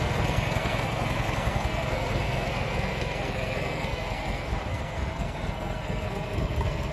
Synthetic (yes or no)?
yes